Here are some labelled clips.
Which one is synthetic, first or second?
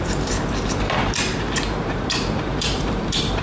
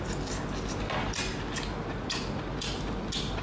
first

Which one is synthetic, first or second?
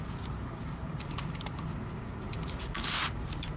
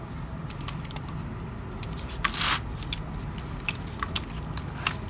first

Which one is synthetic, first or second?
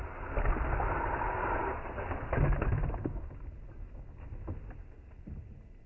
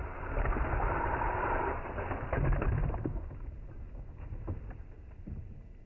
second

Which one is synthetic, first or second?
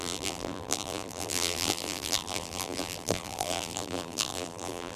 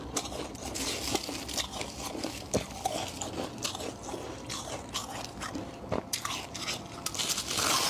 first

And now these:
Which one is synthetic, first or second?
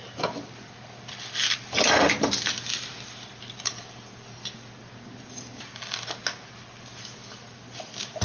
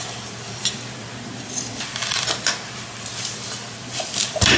second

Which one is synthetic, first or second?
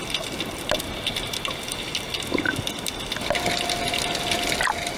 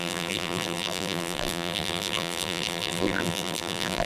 second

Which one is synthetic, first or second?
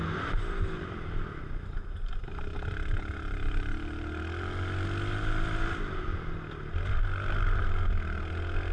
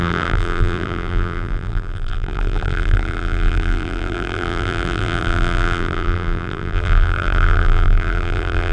second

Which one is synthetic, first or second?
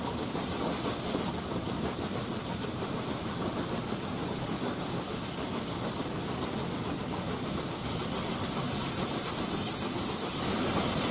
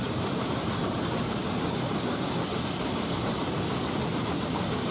second